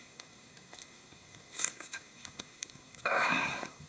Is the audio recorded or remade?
remade